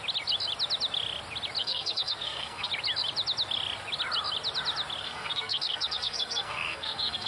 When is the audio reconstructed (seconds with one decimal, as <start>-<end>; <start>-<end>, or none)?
1.6-2.7; 5.0-7.3